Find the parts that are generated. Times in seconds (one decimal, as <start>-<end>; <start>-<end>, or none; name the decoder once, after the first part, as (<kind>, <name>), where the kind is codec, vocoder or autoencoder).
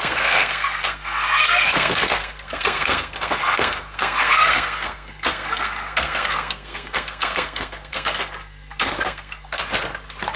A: 0.0-9.6 (codec, SNAC)